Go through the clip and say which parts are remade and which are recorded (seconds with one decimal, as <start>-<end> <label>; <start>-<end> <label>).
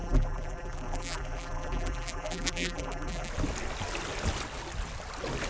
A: 0.0-3.3 remade; 3.3-5.5 recorded